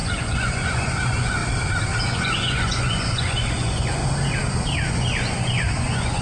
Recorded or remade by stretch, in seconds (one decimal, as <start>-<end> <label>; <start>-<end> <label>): 0.0-1.4 remade; 1.4-2.0 recorded; 2.0-4.0 remade; 4.0-4.9 recorded; 4.9-6.2 remade